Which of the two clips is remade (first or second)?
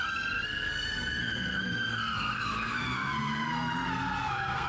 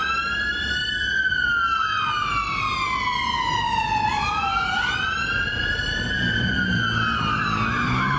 first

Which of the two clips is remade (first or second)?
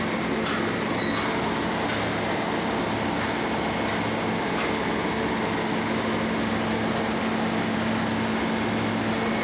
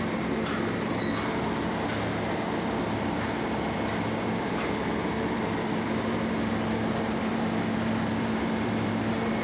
second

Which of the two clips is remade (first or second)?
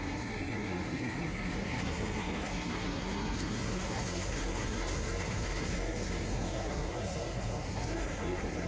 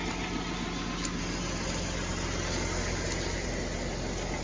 first